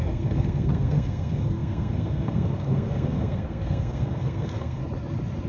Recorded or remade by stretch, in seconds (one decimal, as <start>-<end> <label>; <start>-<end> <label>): 0.0-4.8 remade; 4.8-5.5 recorded